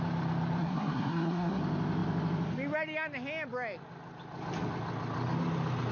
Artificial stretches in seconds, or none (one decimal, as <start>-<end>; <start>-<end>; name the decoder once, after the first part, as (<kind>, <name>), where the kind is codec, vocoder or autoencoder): 0.6-1.6 (codec, SNAC)